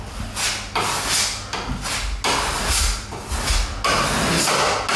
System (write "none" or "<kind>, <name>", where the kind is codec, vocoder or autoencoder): none